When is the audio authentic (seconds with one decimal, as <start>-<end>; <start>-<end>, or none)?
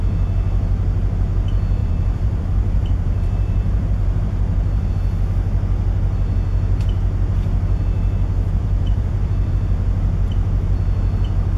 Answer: 0.0-1.8; 4.9-8.6; 9.5-11.6